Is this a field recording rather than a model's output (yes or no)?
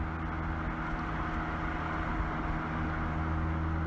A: yes